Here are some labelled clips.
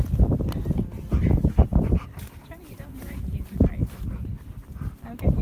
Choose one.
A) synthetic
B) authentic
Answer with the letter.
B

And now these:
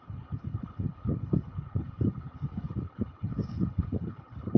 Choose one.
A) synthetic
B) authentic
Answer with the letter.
A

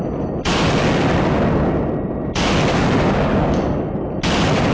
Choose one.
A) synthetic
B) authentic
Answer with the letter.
B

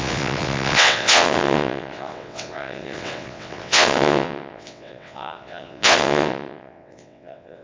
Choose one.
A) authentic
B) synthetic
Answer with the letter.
B